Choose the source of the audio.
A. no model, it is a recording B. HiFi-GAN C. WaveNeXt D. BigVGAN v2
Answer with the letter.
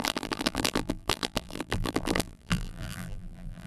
D